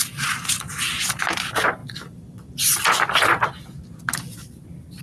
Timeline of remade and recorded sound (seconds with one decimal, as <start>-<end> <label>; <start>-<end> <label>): 0.0-5.0 recorded